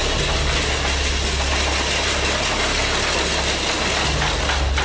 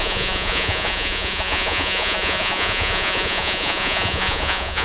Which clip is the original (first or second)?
first